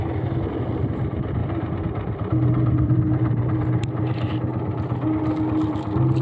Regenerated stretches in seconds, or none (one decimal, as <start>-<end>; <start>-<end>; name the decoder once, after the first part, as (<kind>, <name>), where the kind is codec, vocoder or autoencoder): 1.4-4.3 (vocoder, BigVGAN v2)